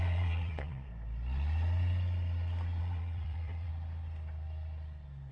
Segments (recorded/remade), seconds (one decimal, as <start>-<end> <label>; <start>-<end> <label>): 0.0-0.9 remade; 0.9-2.8 recorded; 2.8-3.7 remade; 3.7-5.3 recorded